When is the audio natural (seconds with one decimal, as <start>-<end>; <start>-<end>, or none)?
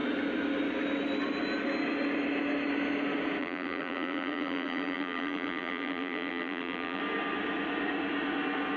0.0-3.4; 7.0-8.8